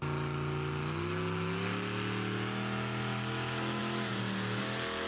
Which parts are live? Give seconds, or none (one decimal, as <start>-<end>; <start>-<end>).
0.0-5.1